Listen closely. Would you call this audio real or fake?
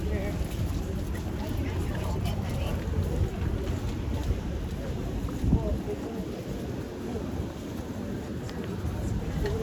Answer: real